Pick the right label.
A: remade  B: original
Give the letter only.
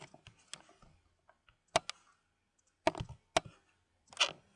B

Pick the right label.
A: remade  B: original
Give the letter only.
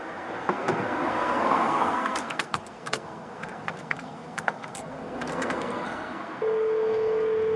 A